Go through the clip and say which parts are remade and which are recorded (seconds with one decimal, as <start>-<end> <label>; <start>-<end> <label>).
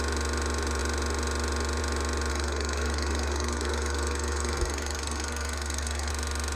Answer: 0.0-2.3 recorded; 2.3-6.1 remade; 6.1-6.6 recorded